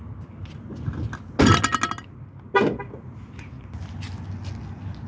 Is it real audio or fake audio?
real